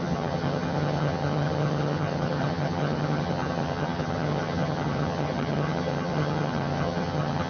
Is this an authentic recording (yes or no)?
no